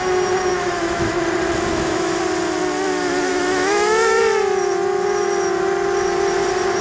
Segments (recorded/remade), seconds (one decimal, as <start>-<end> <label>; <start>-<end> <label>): 0.0-0.5 recorded; 0.5-1.2 remade; 1.2-1.7 recorded; 1.7-2.2 remade; 2.2-3.3 recorded; 3.3-4.2 remade; 4.2-6.8 recorded